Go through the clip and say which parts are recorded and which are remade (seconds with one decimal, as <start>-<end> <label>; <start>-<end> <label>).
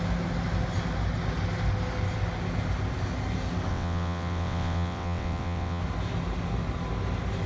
0.0-3.7 recorded; 3.7-5.8 remade; 5.8-7.5 recorded